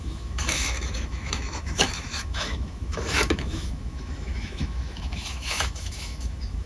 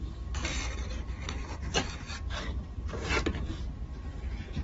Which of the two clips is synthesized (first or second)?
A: first